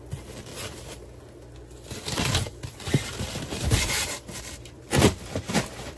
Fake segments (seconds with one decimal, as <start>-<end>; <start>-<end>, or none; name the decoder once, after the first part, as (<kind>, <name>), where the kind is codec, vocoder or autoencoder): none